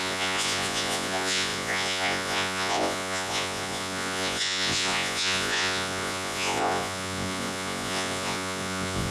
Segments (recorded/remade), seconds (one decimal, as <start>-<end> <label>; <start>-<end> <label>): 0.0-9.1 remade